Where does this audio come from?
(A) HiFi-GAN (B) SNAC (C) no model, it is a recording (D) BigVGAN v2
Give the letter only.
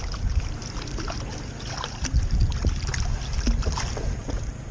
C